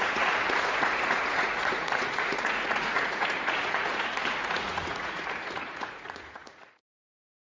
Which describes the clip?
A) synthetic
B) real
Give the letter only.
A